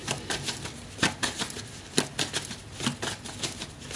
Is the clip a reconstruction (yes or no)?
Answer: no